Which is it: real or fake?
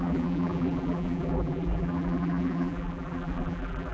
fake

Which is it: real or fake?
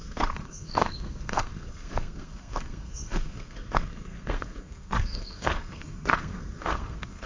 fake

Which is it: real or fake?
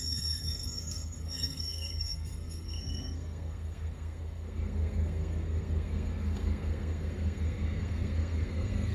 fake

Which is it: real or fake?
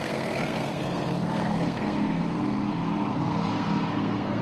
fake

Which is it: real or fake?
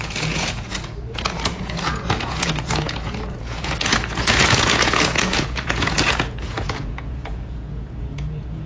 fake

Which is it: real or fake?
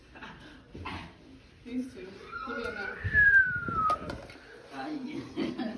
fake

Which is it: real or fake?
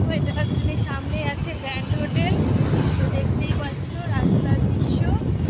real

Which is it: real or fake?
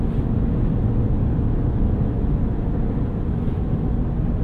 real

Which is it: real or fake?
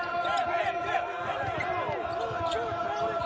real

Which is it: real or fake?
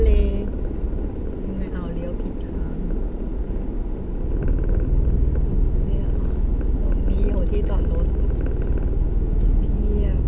real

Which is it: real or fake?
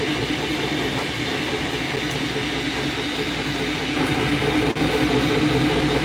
real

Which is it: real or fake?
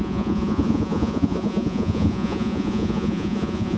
fake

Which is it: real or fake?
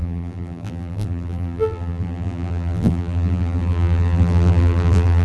fake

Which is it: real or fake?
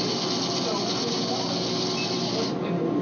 real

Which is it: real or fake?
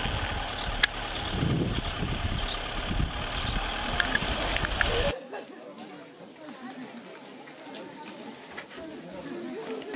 real